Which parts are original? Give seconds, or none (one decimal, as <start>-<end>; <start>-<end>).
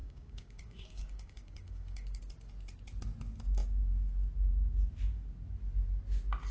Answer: 2.2-6.5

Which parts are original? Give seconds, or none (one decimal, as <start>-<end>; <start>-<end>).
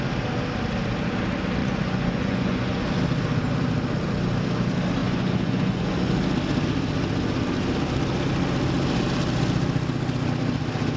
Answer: 0.0-1.6; 2.9-5.0; 6.1-11.0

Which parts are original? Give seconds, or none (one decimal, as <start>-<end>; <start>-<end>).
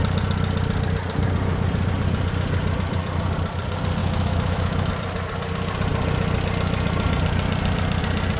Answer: 0.0-4.0; 4.9-8.4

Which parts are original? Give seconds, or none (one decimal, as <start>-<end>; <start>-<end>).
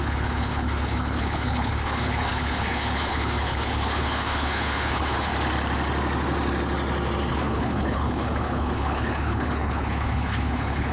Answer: 5.3-7.3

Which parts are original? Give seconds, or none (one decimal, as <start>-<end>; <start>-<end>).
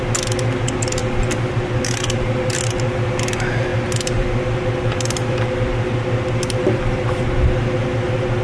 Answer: 0.0-8.4